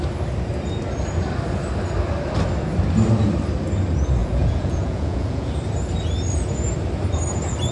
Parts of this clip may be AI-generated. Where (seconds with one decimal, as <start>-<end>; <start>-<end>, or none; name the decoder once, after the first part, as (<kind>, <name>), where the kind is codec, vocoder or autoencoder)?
4.2-5.5 (vocoder, Vocos)